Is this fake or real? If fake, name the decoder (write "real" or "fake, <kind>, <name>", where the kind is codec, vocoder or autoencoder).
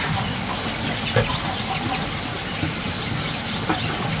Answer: real